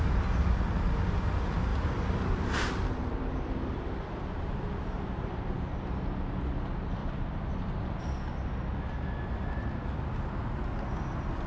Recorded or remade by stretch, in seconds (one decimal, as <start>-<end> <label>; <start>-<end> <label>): 0.0-1.7 recorded; 1.7-5.6 remade; 5.6-7.0 recorded; 7.0-8.0 remade; 8.0-11.5 recorded